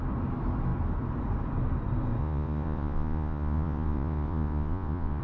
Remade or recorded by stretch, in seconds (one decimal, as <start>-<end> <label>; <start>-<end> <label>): 0.0-2.2 recorded; 2.2-5.2 remade